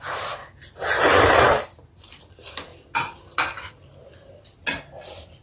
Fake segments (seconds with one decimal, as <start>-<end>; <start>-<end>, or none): none